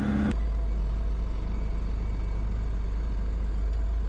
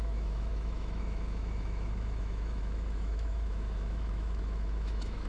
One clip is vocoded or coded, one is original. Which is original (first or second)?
first